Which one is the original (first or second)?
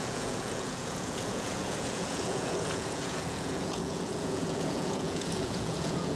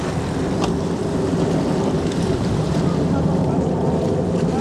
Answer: second